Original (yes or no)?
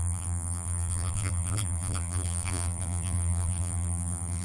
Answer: no